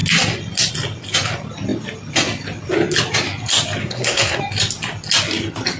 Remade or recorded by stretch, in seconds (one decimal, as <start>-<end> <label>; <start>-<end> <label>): 0.0-3.8 recorded; 3.8-4.4 remade; 4.4-5.8 recorded